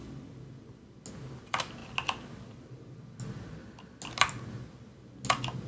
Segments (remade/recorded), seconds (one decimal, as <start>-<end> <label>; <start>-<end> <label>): 0.0-5.7 recorded